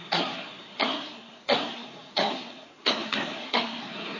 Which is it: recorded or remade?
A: remade